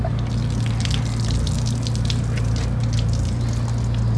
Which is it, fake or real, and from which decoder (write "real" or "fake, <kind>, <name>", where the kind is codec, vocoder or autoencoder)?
real